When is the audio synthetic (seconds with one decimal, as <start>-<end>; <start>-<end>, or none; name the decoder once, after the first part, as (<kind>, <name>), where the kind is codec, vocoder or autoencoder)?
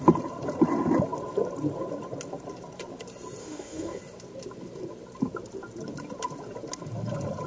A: 3.4-4.0 (autoencoder, DAC-VAE)